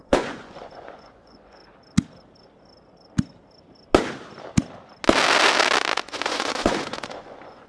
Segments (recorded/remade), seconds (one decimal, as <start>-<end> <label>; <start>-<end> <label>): 0.0-1.6 remade; 1.6-6.0 recorded; 6.0-7.7 remade